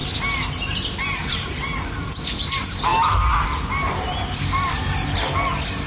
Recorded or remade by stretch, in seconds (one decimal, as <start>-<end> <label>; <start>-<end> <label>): 0.0-5.9 recorded